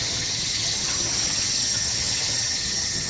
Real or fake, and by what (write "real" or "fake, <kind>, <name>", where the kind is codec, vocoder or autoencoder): fake, vocoder, HiFi-GAN